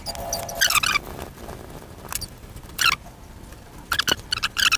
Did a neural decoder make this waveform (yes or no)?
no